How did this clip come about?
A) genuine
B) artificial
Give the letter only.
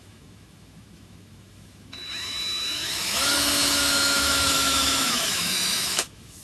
B